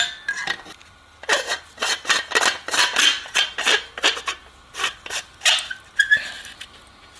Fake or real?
real